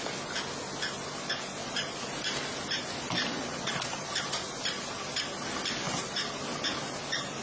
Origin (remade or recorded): recorded